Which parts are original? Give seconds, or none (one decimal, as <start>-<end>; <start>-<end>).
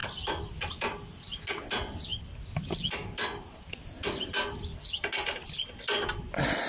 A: 0.0-6.7